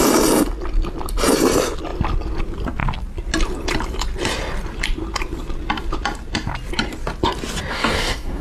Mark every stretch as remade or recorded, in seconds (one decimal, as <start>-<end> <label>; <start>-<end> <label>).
0.0-7.7 recorded; 7.7-8.4 remade